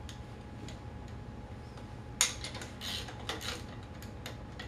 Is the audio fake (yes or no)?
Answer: no